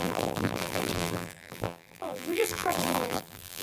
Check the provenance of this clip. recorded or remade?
remade